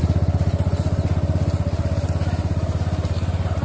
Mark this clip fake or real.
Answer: real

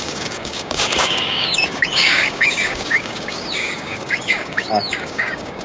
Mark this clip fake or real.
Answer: fake